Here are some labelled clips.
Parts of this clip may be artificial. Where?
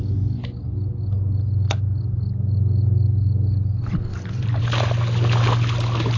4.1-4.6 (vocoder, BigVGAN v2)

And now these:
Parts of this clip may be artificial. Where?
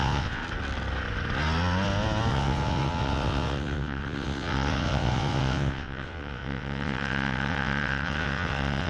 0.0-0.4 (vocoder, WaveNeXt); 2.3-8.9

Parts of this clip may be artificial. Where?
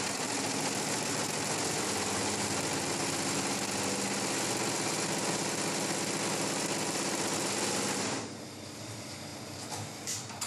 none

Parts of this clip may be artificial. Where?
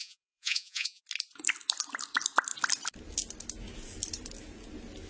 0.0-1.0 (vocoder, Vocos)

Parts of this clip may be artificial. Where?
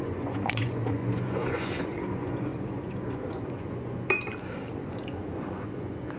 0.0-4.3 (vocoder, Vocos); 4.9-6.2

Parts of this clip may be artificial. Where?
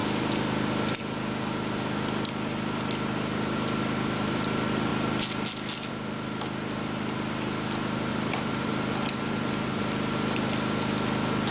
8.1-9.8 (vocoder, BigVGAN v2)